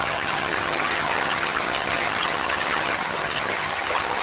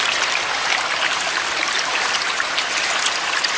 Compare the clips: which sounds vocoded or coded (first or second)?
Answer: first